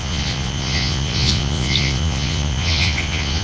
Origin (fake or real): fake